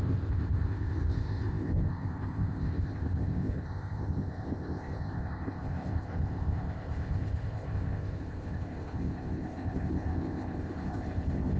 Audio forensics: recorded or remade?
remade